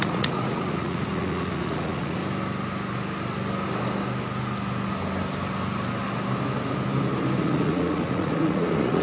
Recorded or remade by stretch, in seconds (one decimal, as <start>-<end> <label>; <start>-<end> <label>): 0.0-2.2 remade; 2.2-7.4 recorded; 7.4-9.0 remade